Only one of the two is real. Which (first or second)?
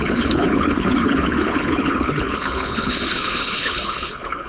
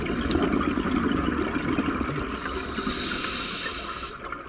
second